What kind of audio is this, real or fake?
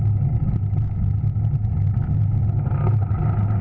real